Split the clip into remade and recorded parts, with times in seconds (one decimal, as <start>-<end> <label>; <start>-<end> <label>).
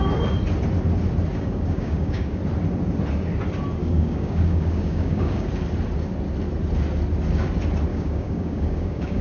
0.0-1.3 recorded; 1.3-2.4 remade; 2.4-3.8 recorded; 3.8-5.5 remade; 5.5-7.9 recorded; 7.9-9.2 remade